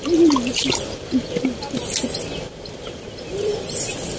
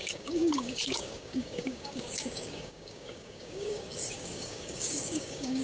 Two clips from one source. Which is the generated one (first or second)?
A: second